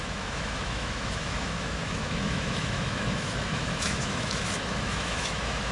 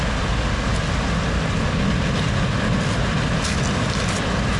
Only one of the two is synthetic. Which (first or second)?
first